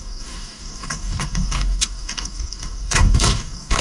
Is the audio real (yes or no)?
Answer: no